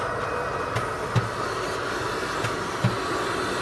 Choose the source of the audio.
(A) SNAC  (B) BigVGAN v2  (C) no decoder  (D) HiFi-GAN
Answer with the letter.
C